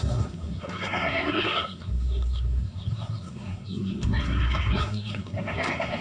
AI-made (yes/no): yes